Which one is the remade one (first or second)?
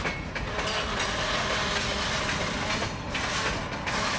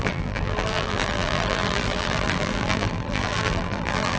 second